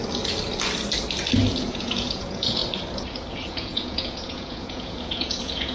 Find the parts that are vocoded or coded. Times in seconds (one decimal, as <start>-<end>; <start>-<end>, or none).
1.5-2.6; 3.3-5.7